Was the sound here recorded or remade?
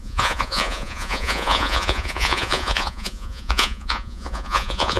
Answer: remade